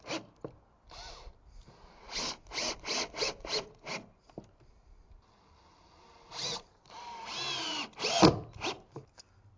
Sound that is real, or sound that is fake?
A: real